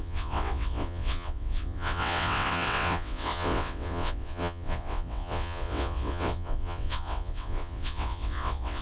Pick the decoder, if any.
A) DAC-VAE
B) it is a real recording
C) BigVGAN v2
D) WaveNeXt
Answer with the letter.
D